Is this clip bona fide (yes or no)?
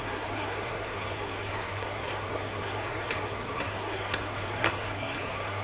no